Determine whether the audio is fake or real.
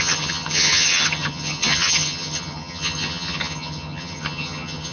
fake